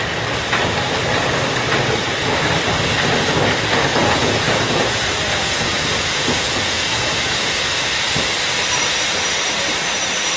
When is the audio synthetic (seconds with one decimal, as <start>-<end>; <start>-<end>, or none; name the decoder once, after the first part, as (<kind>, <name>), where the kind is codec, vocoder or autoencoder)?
4.0-7.8 (vocoder, Vocos)